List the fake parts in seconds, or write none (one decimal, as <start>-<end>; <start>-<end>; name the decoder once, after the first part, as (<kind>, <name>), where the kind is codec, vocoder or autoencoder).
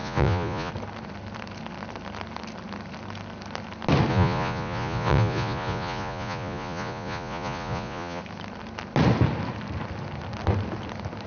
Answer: 0.0-0.7 (vocoder, Vocos); 4.1-8.2